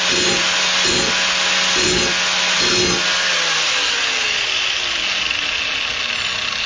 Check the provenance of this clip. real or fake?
real